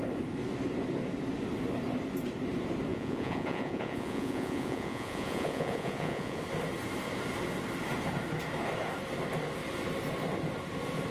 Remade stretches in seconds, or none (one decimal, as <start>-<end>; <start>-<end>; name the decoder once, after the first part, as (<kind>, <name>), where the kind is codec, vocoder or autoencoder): 2.9-6.4 (vocoder, Vocos)